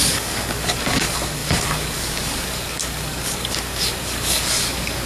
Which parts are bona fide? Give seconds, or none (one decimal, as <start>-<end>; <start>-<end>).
none